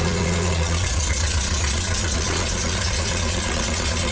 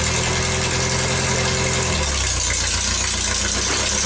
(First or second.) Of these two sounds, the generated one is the first